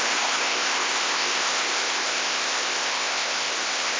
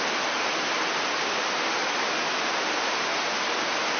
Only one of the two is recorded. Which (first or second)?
second